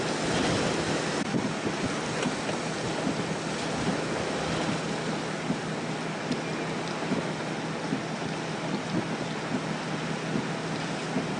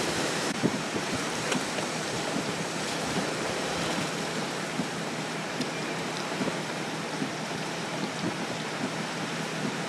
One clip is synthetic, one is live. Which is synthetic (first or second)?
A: second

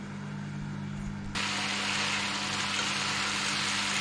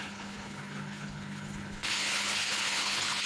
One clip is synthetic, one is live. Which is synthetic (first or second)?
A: second